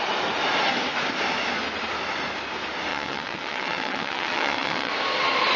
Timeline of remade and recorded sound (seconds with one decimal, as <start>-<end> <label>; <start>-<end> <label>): 0.0-2.9 recorded; 2.9-4.9 remade; 4.9-5.6 recorded